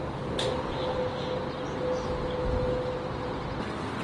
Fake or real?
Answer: real